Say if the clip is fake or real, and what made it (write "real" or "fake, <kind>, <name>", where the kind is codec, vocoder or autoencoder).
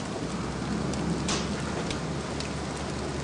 real